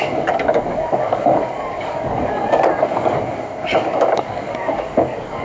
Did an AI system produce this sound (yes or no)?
yes